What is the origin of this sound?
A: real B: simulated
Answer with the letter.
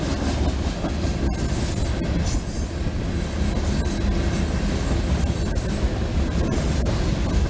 A